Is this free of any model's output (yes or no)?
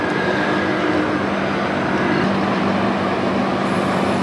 yes